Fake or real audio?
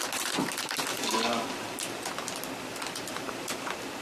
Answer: real